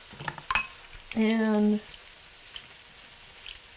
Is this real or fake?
real